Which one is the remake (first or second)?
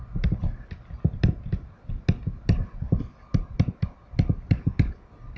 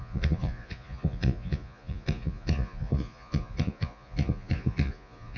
second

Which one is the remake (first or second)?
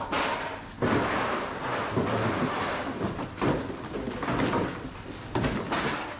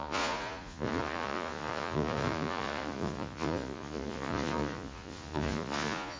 second